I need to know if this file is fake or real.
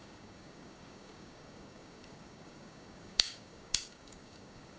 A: fake